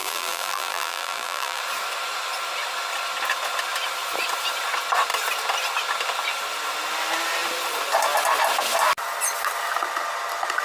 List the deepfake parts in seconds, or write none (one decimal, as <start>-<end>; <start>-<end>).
0.0-1.6